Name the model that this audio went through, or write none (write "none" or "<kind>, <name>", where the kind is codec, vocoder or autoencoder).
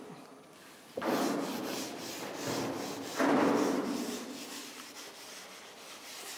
none